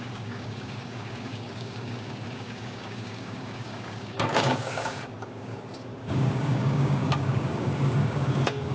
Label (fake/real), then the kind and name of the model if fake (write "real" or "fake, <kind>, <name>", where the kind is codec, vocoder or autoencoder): fake, codec, DAC